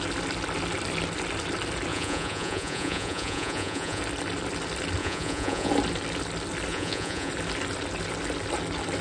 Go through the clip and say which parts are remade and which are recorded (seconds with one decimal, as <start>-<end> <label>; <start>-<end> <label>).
0.0-1.9 recorded; 1.9-4.0 remade; 4.0-5.0 recorded; 5.0-5.7 remade; 5.7-6.7 recorded; 6.7-7.3 remade; 7.3-9.0 recorded